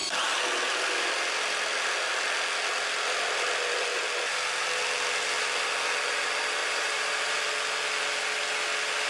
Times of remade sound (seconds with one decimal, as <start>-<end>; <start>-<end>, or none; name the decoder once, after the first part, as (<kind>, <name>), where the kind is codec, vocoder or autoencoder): 6.6-7.4 (vocoder, BigVGAN v2)

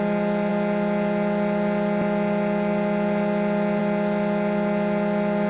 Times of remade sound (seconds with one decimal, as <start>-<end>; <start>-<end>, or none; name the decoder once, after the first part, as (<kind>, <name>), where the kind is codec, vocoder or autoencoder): none

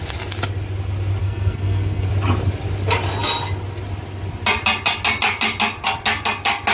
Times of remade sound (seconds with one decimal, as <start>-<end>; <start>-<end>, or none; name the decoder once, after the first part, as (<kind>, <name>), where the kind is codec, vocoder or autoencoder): 1.2-2.1 (codec, SNAC)

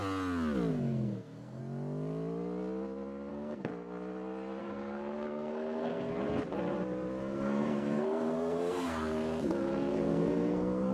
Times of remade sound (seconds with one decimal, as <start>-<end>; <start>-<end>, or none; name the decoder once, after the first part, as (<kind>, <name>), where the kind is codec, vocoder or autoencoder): 0.7-1.6 (codec, SNAC); 3.3-3.7; 4.6-6.1; 7.2-10.9

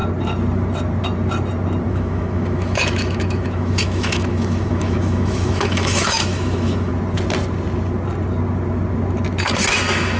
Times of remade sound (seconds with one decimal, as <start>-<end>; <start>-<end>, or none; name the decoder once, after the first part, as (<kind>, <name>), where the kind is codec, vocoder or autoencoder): 1.9-6.9 (autoencoder, DAC-VAE)

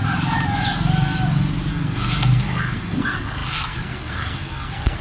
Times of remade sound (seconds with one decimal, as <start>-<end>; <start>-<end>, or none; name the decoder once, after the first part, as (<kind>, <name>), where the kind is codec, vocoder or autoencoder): 1.7-5.0 (codec, SNAC)